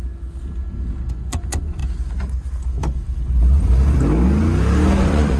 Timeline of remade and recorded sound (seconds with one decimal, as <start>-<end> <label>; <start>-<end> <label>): 0.0-1.1 recorded; 1.1-1.8 remade; 1.8-5.0 recorded; 5.0-5.4 remade